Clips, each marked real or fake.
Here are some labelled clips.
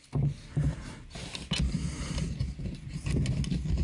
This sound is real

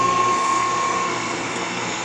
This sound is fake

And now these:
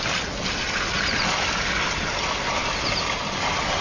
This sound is real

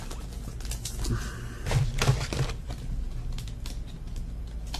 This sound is real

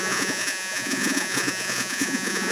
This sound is fake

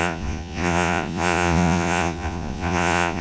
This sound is fake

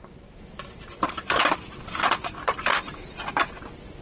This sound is fake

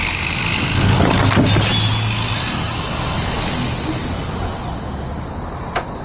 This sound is real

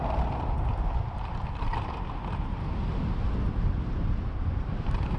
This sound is real